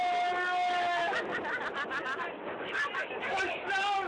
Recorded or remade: recorded